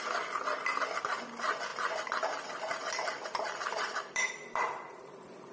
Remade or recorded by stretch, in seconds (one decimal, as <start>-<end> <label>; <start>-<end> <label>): 0.0-1.7 recorded; 1.7-5.0 remade; 5.0-5.5 recorded